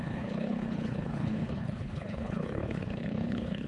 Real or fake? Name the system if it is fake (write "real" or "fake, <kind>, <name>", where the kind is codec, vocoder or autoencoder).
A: fake, codec, HILCodec